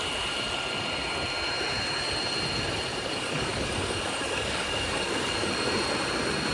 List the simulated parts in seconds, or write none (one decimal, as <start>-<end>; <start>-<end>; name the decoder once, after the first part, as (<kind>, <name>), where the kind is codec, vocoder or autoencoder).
2.9-5.5 (codec, DAC)